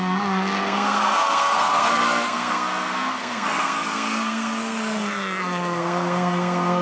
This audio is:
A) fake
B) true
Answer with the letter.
A